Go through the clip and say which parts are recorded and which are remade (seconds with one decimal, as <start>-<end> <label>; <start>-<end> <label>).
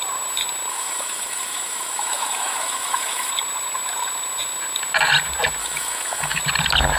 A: 0.0-0.7 recorded; 0.7-3.3 remade; 3.3-5.6 recorded; 5.6-6.4 remade; 6.4-7.0 recorded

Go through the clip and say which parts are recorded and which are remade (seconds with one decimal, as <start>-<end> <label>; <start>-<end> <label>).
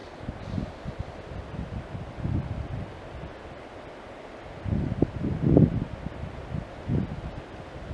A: 0.0-7.9 recorded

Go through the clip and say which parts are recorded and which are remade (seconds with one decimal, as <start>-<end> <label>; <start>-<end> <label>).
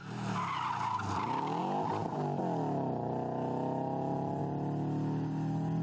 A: 0.0-5.8 recorded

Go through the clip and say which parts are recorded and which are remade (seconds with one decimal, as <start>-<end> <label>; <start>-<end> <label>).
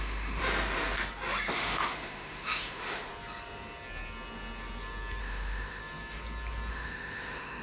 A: 0.0-0.4 remade; 0.4-1.5 recorded; 1.5-3.1 remade; 3.1-5.2 recorded; 5.2-5.8 remade; 5.8-6.7 recorded; 6.7-7.6 remade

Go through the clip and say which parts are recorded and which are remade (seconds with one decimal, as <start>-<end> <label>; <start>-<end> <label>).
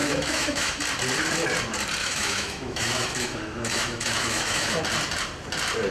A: 0.0-0.8 remade; 0.8-2.0 recorded; 2.0-4.8 remade; 4.8-5.9 recorded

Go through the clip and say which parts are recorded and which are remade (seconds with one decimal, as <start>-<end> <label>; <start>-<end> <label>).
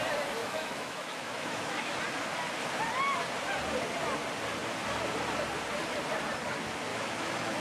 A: 0.0-0.4 recorded; 0.4-2.0 remade; 2.0-6.9 recorded; 6.9-7.6 remade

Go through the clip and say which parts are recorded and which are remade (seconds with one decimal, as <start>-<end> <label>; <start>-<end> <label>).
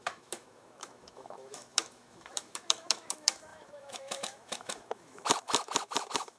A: 0.0-6.4 remade